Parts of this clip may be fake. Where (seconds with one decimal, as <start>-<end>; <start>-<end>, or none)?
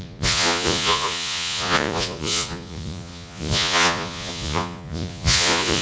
0.0-5.8